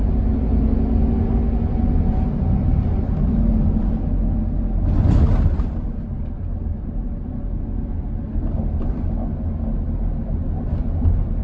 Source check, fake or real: real